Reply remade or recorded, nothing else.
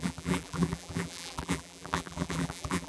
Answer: remade